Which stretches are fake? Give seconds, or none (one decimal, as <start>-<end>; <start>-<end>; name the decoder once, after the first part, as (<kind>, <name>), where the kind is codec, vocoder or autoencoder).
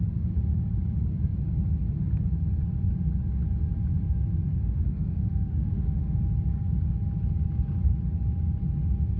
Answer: 4.5-6.2 (autoencoder, DAC-VAE)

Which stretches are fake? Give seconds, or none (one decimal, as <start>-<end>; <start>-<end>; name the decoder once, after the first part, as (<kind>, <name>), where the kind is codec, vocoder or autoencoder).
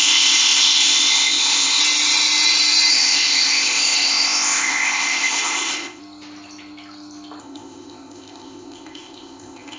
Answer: 0.0-1.8 (codec, ZipCodec); 2.9-6.0; 7.4-9.8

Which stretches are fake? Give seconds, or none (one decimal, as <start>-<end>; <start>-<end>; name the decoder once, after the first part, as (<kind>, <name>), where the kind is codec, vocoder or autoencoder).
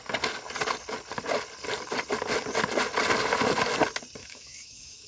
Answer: 4.2-5.1 (autoencoder, DAC-VAE)